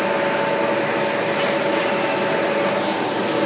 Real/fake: real